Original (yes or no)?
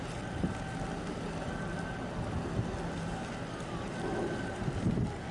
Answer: yes